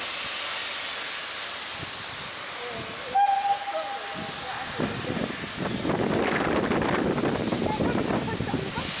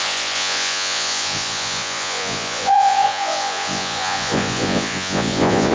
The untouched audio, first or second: first